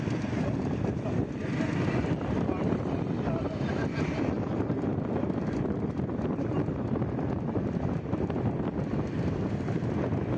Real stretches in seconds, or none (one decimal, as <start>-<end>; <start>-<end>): 1.4-2.0